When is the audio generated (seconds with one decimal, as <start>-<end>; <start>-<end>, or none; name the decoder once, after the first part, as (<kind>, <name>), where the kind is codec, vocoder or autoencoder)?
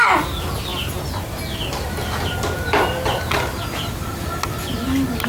none